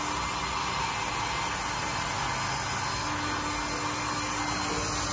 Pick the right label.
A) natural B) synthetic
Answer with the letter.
A